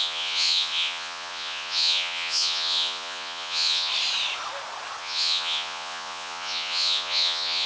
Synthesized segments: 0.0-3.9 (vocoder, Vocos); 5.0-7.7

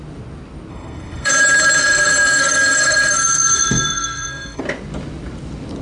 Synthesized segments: 0.7-1.3 (codec, SNAC); 1.8-4.6

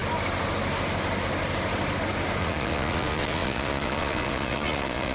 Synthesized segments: 2.4-5.1 (vocoder, Vocos)

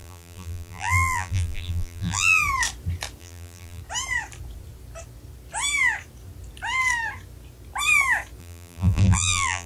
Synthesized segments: 0.0-2.4 (vocoder, BigVGAN v2); 3.2-3.8; 8.4-9.7

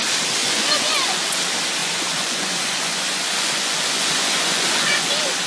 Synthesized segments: 0.4-1.4 (vocoder, Vocos); 1.8-5.1

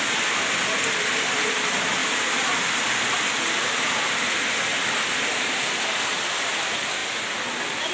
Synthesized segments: none